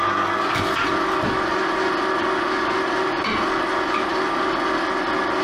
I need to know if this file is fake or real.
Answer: real